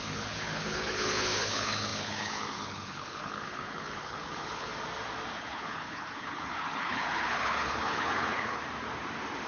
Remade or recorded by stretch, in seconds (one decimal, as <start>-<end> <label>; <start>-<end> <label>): 0.0-4.7 remade; 4.7-5.4 recorded; 5.4-8.6 remade; 8.6-9.5 recorded

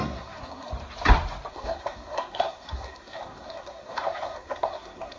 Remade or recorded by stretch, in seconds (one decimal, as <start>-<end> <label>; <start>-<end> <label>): 0.0-0.7 remade; 0.7-1.5 recorded; 1.5-5.2 remade